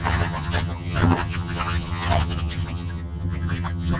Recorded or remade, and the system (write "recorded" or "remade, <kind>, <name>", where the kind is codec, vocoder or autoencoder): remade, vocoder, HiFi-GAN